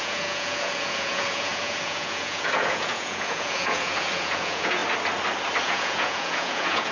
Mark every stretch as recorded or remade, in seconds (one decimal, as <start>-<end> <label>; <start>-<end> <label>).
0.0-4.8 remade; 4.8-5.6 recorded; 5.6-6.9 remade